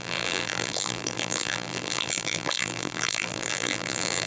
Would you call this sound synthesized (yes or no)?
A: yes